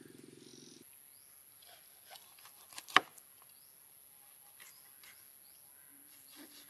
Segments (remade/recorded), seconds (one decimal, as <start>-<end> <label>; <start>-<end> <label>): 0.0-6.7 recorded